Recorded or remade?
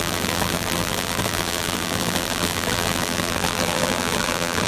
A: remade